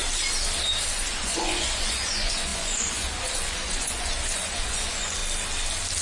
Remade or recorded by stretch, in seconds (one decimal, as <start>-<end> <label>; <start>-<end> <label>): 0.0-0.9 recorded; 0.9-5.2 remade; 5.2-6.0 recorded